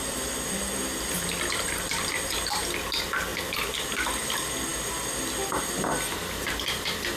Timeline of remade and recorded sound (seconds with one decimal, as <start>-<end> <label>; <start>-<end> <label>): 0.0-7.2 recorded